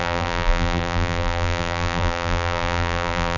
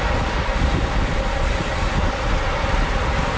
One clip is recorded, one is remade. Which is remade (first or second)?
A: first